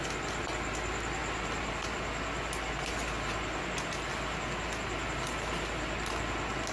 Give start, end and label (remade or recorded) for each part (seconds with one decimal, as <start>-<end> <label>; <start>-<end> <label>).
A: 0.0-6.7 recorded